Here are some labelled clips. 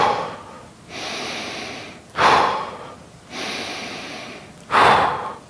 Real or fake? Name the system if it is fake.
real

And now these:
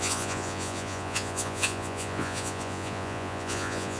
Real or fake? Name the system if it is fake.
fake, vocoder, Vocos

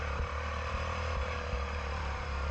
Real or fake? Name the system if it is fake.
fake, vocoder, BigVGAN v2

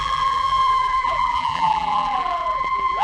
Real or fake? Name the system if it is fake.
fake, vocoder, BigVGAN v2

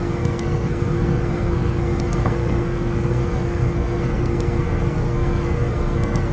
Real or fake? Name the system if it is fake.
fake, codec, SNAC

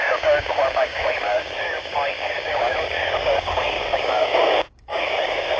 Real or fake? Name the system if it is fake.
fake, codec, DAC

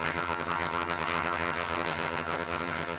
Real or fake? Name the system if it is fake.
fake, vocoder, HiFi-GAN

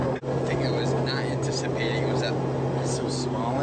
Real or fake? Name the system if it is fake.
real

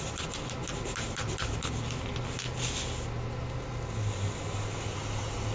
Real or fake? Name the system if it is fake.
real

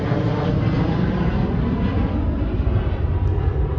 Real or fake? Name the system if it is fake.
real